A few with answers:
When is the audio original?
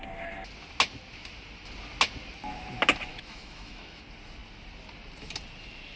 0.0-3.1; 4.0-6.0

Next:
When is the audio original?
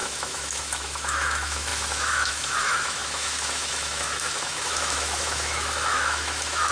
none